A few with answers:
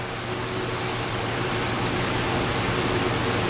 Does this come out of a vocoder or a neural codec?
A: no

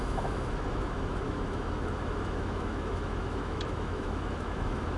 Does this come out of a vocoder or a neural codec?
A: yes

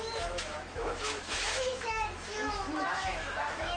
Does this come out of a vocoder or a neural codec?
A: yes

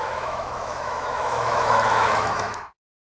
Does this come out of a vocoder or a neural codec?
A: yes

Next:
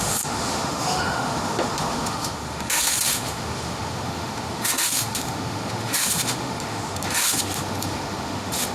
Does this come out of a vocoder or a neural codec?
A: yes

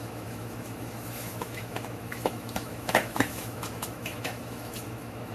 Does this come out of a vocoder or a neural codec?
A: yes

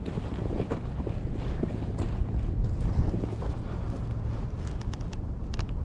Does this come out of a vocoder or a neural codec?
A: no